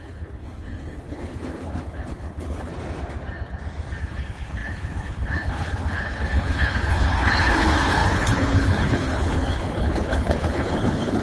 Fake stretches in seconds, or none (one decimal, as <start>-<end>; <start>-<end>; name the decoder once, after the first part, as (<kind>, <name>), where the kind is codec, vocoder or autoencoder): 0.0-2.7 (codec, HILCodec); 4.0-11.2